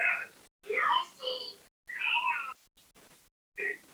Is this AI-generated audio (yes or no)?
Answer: no